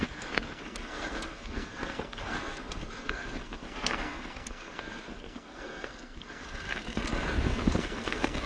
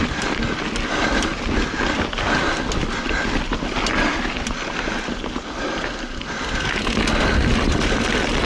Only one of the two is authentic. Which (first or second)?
second